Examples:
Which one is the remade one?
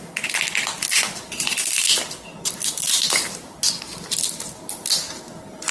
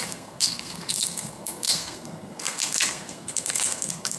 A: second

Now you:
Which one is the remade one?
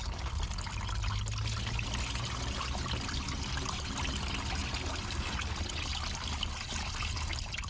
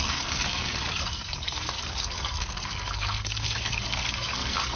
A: second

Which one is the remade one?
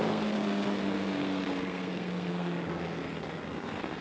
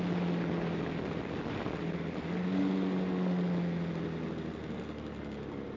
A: first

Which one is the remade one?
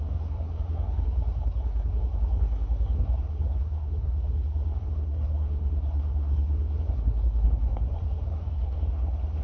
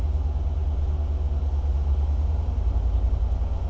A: first